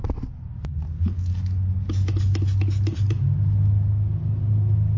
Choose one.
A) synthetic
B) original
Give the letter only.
B